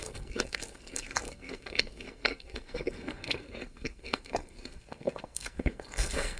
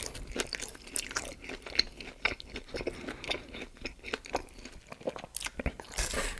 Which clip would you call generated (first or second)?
first